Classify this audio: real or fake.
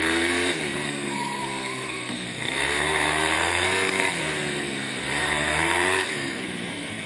fake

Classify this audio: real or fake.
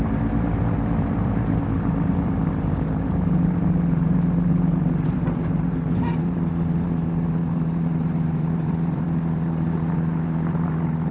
fake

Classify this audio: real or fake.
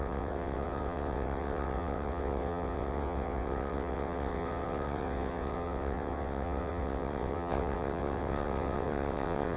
fake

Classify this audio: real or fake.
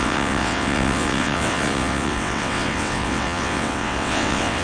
fake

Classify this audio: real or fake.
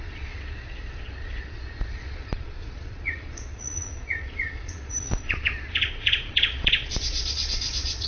fake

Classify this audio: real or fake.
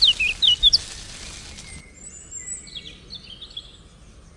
real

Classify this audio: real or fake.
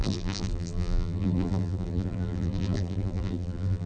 fake